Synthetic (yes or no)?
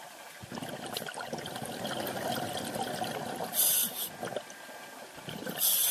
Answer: no